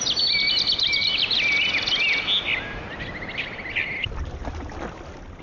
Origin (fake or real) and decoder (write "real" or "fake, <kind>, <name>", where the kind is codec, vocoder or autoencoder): real